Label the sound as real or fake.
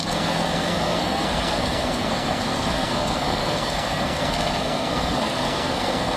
fake